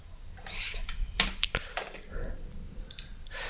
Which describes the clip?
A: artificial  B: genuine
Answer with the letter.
B